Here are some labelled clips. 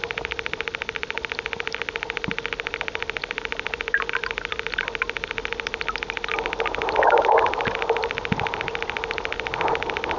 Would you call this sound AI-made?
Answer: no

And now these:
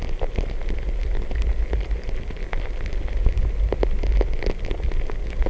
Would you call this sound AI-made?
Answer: no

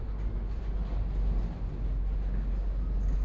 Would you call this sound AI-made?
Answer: no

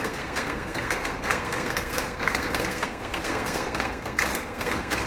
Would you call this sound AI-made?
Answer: yes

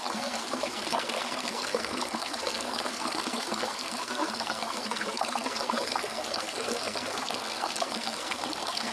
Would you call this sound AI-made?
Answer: yes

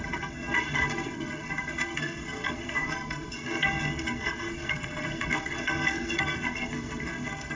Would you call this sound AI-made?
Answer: yes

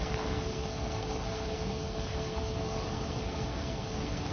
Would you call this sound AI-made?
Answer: yes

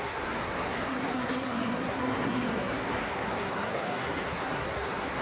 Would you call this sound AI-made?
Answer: yes